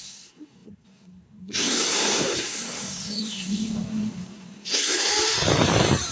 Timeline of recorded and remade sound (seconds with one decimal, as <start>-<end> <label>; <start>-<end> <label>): 0.0-5.1 remade; 5.1-6.1 recorded